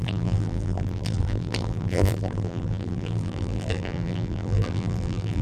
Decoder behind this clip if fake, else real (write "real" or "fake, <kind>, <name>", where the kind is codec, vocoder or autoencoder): fake, vocoder, BigVGAN v2